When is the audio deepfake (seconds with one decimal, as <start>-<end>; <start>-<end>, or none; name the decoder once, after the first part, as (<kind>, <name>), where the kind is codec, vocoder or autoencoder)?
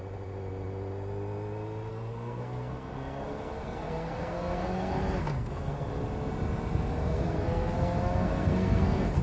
1.9-5.9 (codec, SNAC); 7.0-9.2